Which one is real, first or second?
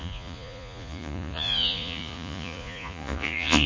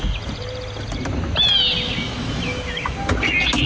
second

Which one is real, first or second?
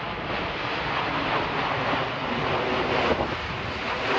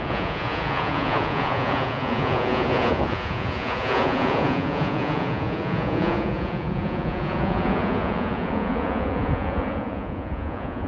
first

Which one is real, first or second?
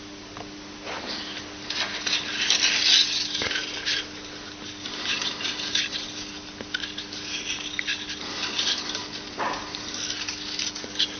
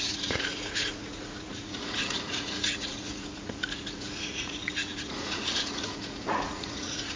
first